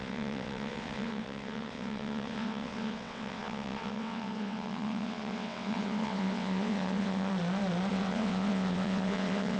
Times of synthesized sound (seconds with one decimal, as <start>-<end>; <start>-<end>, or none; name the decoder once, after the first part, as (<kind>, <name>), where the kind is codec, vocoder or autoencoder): 0.0-7.3 (vocoder, WaveNeXt); 7.9-9.6